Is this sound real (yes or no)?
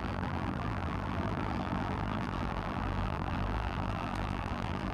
no